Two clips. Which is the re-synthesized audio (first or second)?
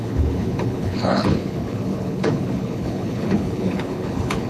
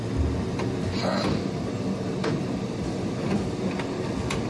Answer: first